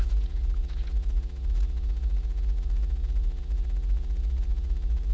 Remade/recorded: remade